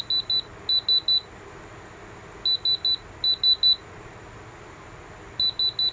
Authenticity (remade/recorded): recorded